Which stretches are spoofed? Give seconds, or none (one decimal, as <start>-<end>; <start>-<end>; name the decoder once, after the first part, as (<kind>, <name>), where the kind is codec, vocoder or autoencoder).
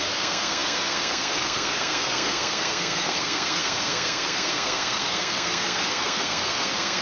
0.0-7.0 (codec, SNAC)